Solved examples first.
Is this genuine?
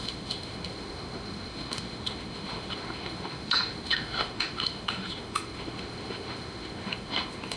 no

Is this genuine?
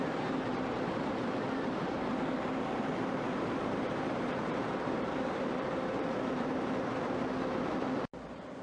no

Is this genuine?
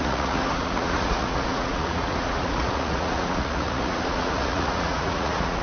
no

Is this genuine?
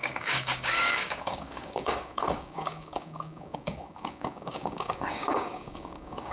no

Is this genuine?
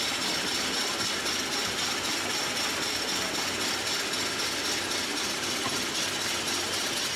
yes